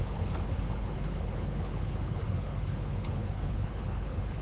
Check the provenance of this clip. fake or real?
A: fake